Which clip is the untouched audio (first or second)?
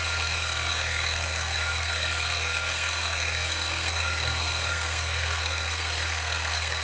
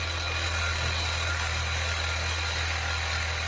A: second